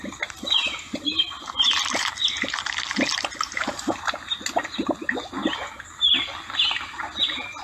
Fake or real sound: real